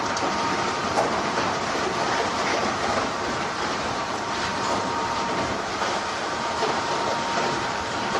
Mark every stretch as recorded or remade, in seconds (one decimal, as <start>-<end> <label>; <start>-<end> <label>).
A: 0.0-2.6 remade; 2.6-3.8 recorded; 3.8-8.2 remade